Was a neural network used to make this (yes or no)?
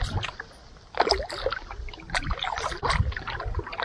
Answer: no